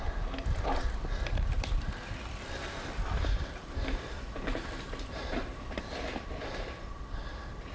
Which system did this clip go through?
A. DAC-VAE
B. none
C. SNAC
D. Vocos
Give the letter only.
B